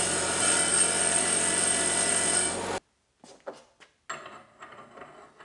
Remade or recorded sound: recorded